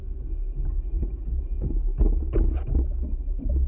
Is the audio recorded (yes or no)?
yes